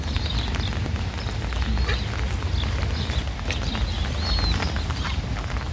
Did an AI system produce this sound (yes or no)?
no